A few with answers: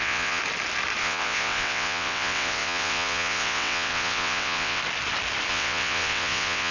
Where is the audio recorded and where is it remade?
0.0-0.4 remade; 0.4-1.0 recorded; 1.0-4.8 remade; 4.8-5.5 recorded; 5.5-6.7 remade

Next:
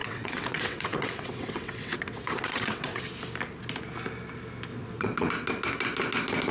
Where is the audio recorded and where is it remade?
0.0-3.0 remade; 3.0-4.7 recorded; 4.7-5.3 remade; 5.3-6.5 recorded

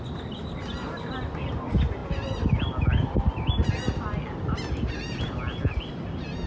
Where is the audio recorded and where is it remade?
0.0-6.5 recorded